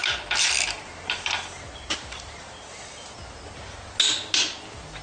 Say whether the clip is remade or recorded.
recorded